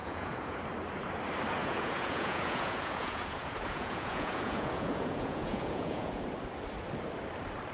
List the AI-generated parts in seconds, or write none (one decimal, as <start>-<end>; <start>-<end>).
0.0-0.6; 1.6-6.2